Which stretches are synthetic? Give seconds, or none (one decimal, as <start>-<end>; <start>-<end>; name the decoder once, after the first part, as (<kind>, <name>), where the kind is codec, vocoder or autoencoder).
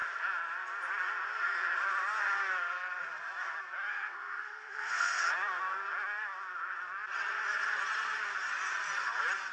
3.9-5.2 (codec, SNAC)